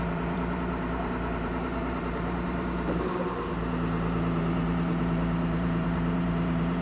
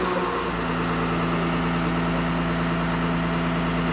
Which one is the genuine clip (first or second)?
second